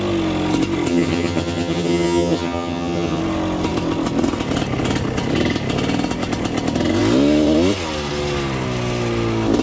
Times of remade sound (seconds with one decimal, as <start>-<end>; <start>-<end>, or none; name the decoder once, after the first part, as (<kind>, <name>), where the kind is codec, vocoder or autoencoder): 0.9-3.2 (vocoder, HiFi-GAN)